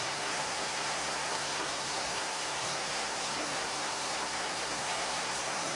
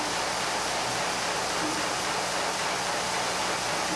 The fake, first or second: first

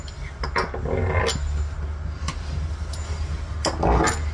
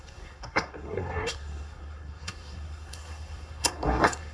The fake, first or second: second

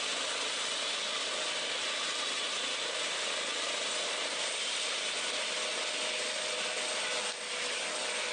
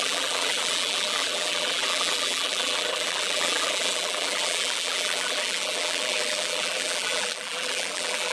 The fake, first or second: second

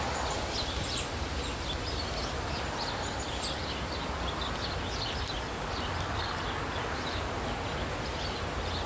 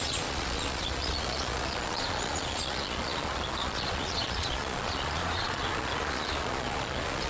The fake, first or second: second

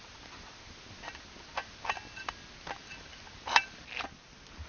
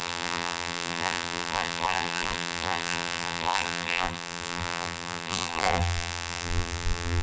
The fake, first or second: second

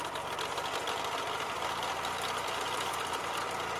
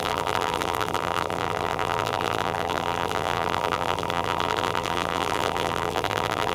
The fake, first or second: second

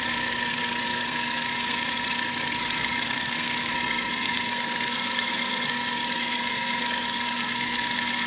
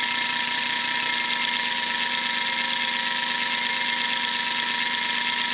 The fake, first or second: first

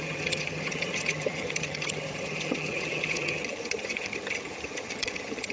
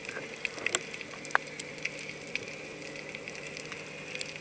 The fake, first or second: first